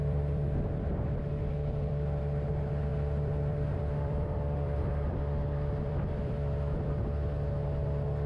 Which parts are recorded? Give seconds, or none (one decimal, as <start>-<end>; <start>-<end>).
2.2-2.9; 6.9-8.3